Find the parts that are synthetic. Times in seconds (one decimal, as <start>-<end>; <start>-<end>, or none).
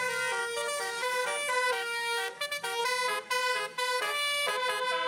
0.4-2.8; 3.4-4.5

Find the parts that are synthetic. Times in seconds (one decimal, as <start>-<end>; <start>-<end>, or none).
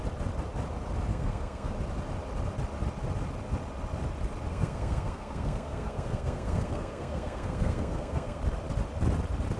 1.1-1.7; 4.5-8.4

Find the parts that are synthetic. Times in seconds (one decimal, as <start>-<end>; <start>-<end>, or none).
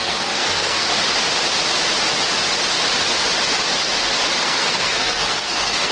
0.0-0.9; 4.4-5.9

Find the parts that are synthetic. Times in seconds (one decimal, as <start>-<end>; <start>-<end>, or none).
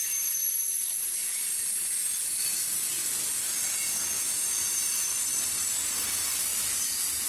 6.5-7.3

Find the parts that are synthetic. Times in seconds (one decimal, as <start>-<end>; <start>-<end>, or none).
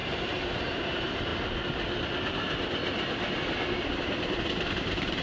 0.0-1.3; 4.4-5.2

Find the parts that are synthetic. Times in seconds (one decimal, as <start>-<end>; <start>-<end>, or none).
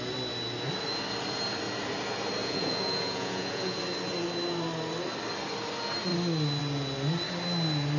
2.4-3.8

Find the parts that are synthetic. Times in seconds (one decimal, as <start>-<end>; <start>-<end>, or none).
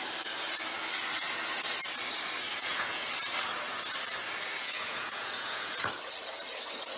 2.5-3.1; 4.6-5.7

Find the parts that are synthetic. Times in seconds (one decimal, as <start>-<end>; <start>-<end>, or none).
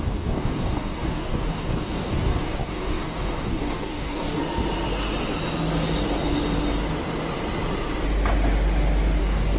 0.0-4.4; 9.2-9.6